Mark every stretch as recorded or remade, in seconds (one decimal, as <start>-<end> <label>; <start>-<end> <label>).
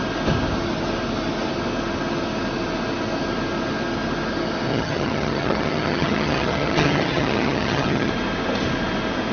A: 0.0-4.7 recorded; 4.7-8.1 remade; 8.1-9.3 recorded